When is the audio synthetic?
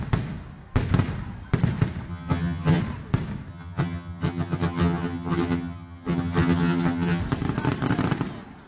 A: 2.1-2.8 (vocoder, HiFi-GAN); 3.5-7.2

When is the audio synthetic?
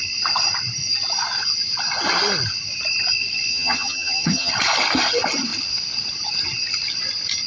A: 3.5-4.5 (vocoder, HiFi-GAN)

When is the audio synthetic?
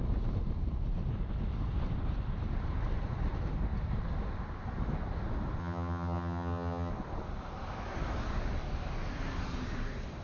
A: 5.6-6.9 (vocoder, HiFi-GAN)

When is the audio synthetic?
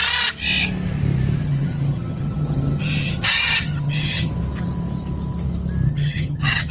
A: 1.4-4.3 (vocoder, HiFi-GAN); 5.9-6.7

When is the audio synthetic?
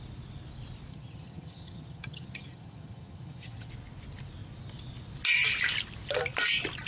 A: 0.9-3.7 (vocoder, HiFi-GAN)